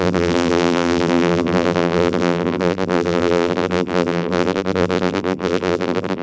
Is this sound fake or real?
fake